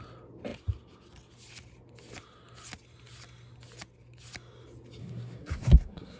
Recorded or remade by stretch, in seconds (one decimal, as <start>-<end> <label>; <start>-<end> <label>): 0.0-5.0 recorded; 5.0-6.2 remade